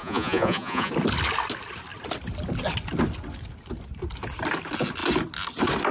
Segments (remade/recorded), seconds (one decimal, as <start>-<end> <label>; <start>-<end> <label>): 0.0-0.9 remade; 0.9-5.9 recorded